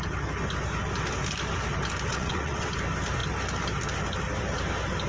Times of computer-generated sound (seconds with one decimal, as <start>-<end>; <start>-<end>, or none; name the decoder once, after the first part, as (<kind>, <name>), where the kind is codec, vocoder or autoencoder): 2.1-2.7 (vocoder, WaveNeXt)